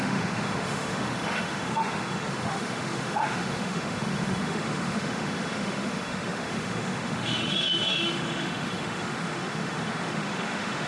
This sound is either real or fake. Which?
fake